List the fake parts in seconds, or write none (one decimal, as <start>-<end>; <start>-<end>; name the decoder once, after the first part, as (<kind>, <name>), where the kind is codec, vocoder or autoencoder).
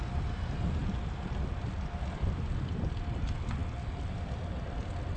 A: none